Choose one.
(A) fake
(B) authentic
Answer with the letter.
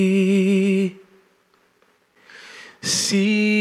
B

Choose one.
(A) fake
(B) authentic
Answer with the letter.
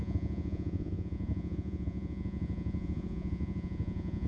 A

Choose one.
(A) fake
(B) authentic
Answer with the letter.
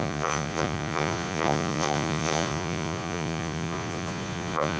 A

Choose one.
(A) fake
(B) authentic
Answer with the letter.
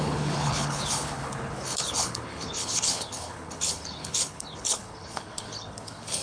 A